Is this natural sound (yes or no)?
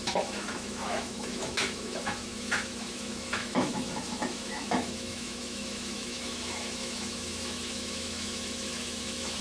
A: no